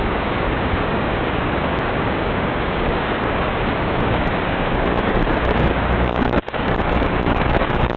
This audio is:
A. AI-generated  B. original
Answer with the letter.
A